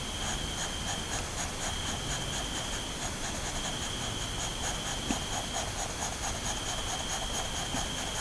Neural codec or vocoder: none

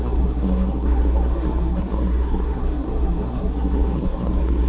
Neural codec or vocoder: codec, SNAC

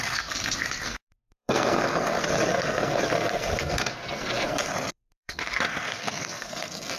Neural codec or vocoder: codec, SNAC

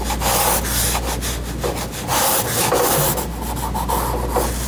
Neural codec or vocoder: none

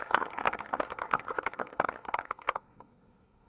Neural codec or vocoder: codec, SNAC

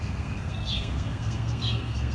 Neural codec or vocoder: codec, SNAC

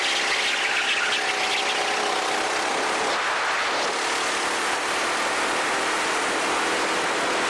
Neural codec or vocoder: none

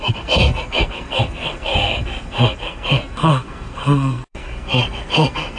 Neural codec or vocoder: codec, SNAC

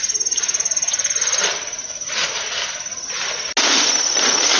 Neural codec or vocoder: none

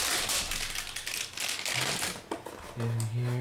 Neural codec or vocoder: none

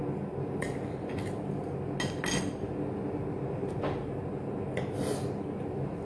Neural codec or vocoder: none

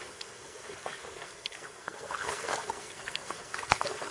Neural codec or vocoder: codec, SNAC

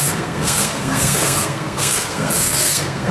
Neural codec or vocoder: codec, SNAC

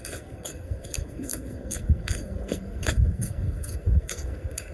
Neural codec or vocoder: codec, SNAC